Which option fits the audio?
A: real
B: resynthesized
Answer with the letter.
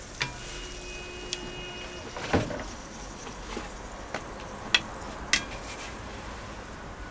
A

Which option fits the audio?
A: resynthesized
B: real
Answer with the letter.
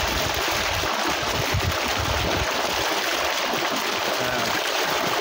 B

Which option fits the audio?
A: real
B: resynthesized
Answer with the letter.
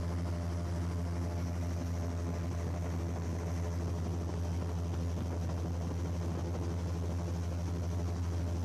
A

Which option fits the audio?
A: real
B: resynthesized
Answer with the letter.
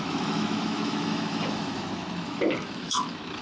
B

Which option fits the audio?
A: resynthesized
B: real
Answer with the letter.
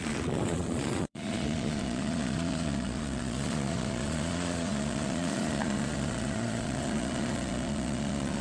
A